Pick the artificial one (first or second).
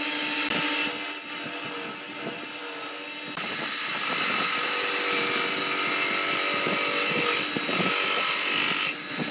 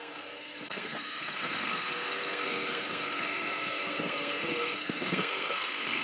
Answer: second